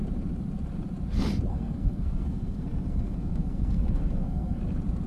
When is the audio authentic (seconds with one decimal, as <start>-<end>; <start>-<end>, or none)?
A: 0.0-1.5; 4.6-5.1